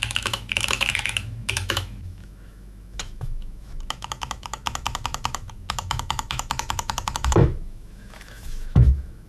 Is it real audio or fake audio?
fake